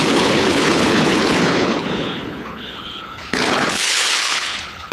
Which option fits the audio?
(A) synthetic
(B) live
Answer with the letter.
A